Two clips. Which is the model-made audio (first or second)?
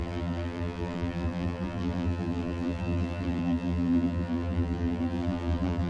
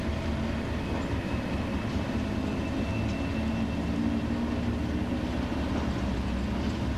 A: first